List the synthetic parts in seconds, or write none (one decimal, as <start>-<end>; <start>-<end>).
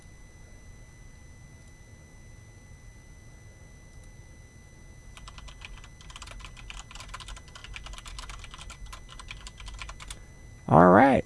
none